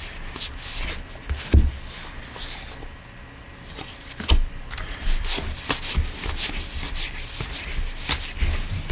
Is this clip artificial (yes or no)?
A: no